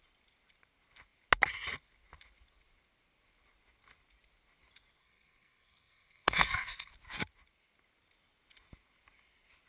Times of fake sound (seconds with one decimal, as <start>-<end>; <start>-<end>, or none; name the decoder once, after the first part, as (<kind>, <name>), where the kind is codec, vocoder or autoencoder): 5.0-6.9 (codec, SNAC)